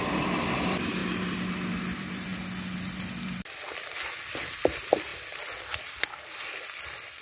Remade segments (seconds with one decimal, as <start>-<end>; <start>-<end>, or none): 0.0-1.0; 1.8-2.3; 4.3-7.2